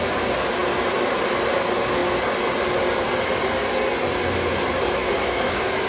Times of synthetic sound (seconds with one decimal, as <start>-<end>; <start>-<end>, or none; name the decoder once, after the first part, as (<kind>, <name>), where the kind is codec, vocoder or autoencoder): 5.0-5.9 (autoencoder, DAC-VAE)